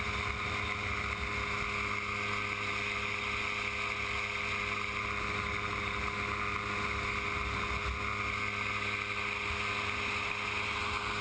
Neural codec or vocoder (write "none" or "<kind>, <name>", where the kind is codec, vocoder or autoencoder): none